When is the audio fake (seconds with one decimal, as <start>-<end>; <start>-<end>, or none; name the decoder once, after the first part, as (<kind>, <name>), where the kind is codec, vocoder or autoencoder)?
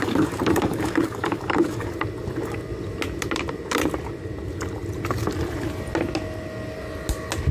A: 0.0-1.9 (codec, DAC)